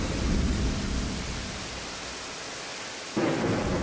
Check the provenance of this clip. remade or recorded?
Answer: recorded